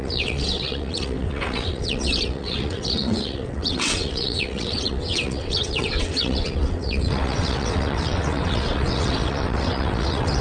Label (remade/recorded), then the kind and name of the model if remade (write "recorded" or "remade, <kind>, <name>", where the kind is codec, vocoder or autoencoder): remade, vocoder, WaveNeXt